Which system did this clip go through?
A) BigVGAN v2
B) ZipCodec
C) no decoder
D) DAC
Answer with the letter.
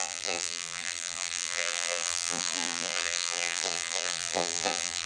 A